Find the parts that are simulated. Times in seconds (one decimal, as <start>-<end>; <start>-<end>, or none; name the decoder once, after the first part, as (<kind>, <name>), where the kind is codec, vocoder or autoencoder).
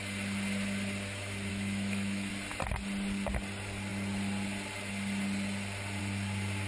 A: 1.5-2.3 (autoencoder, DAC-VAE)